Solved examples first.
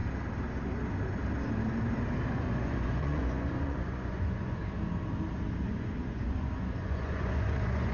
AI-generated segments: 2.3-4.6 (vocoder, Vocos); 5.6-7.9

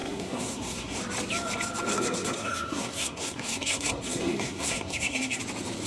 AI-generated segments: 0.0-1.0 (codec, SNAC); 1.9-5.4

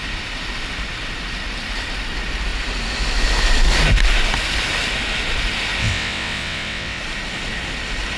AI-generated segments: 5.8-7.0 (vocoder, WaveNeXt)

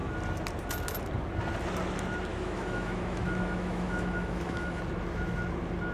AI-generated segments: 2.3-4.8 (autoencoder, DAC-VAE)

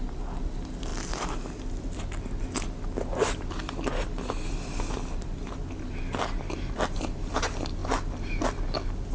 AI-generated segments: none